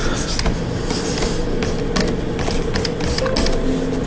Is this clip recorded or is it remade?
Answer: recorded